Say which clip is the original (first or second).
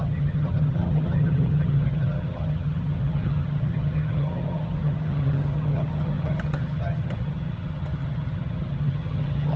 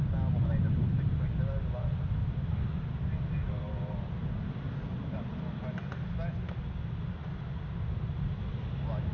second